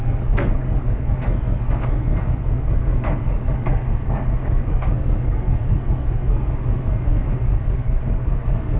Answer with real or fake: fake